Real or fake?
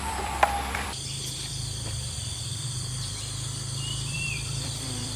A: fake